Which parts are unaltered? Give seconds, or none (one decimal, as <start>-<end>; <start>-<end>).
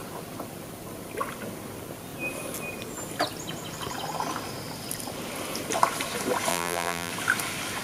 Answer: 0.0-6.5; 7.1-7.8